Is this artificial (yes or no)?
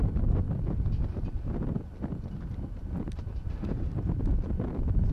no